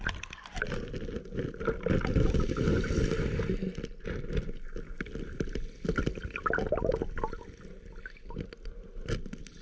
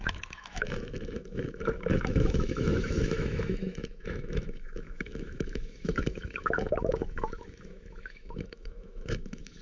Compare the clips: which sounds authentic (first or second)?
first